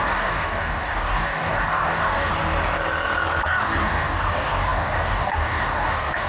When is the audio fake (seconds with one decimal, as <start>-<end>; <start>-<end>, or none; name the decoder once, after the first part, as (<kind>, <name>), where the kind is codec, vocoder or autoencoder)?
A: 0.0-2.3 (codec, DAC); 3.4-6.3